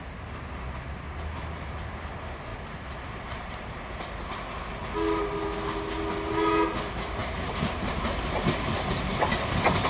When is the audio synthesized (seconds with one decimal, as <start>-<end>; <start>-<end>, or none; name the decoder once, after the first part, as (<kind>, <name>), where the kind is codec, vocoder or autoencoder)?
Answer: 2.5-3.8 (vocoder, BigVGAN v2); 7.2-9.1